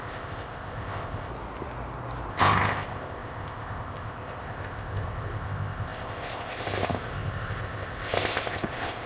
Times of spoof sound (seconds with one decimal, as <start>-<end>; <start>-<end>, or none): 0.0-1.3; 2.3-9.1